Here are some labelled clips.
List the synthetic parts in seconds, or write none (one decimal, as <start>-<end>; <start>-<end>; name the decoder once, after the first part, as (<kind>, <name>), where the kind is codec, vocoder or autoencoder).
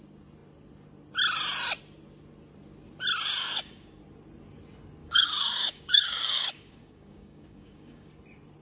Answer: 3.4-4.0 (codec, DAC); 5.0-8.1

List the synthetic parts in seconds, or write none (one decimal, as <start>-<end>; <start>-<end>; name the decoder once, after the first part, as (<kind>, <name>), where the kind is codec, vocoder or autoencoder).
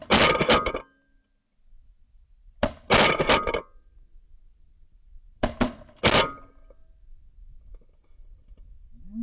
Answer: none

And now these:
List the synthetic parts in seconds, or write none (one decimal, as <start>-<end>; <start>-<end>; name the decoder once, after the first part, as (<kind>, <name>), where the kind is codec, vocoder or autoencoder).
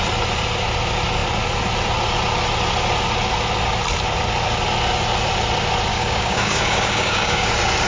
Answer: 5.9-7.5 (codec, DAC)